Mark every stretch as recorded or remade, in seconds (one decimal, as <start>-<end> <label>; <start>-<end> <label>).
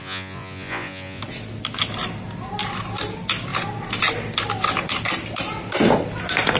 0.0-1.2 remade; 1.2-6.6 recorded